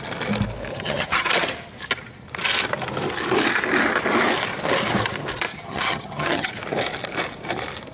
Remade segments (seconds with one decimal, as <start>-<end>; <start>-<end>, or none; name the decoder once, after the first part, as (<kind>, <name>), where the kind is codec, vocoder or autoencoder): 0.7-1.3 (vocoder, HiFi-GAN); 5.5-6.5